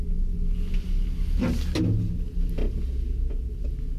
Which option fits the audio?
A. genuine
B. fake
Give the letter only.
A